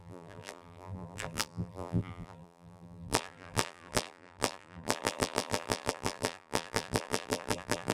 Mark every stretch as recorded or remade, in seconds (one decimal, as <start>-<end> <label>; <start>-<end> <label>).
0.0-7.9 remade